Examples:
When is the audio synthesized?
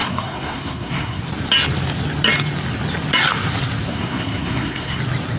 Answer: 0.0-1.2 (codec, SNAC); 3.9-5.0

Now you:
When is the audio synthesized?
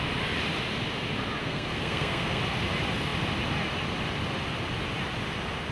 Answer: 1.4-2.4 (codec, SNAC)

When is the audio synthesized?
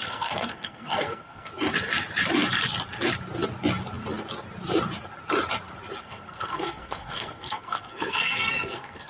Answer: 0.0-1.5 (codec, SNAC); 6.0-9.1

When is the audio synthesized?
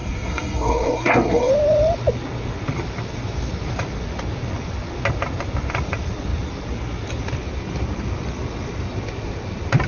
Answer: 0.0-1.5 (codec, SNAC)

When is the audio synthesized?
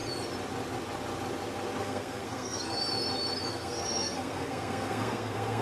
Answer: 1.8-2.8 (codec, SNAC); 3.5-5.6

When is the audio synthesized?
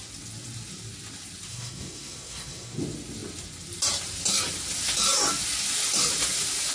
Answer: 1.5-2.8 (codec, SNAC)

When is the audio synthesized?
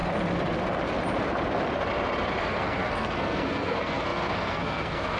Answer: 2.4-5.2 (codec, SNAC)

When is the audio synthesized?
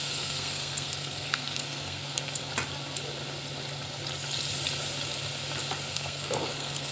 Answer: 0.0-2.5 (codec, SNAC); 5.9-6.9